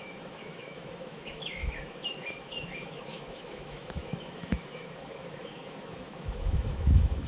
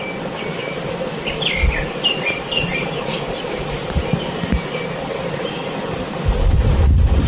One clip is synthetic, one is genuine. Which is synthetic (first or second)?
first